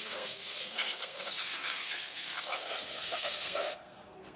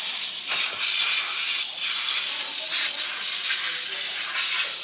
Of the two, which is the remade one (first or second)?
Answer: first